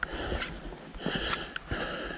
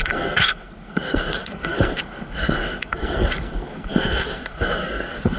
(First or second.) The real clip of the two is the first